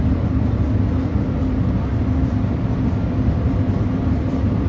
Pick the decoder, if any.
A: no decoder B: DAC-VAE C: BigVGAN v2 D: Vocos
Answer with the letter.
A